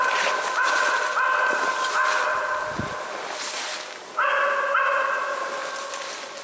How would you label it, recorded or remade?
recorded